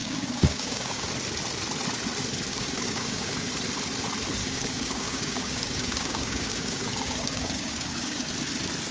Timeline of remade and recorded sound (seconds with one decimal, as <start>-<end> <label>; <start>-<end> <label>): 0.0-1.1 remade; 1.1-2.5 recorded; 2.5-3.5 remade; 3.5-4.4 recorded; 4.4-8.3 remade; 8.3-8.9 recorded